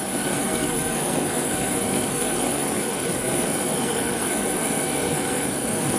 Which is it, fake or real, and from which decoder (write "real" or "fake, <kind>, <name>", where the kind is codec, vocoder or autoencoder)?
fake, codec, SNAC